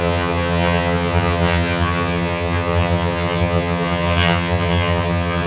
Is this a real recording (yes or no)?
no